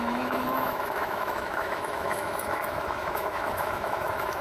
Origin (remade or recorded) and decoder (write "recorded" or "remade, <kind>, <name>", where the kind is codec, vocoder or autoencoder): remade, autoencoder, DAC-VAE